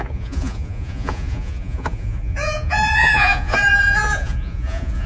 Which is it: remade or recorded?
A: remade